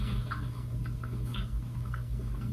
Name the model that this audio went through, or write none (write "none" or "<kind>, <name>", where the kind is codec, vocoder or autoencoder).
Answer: codec, SNAC